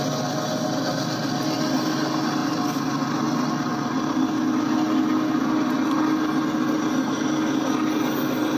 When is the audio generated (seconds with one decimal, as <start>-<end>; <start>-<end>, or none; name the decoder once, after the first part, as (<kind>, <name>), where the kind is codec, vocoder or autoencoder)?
none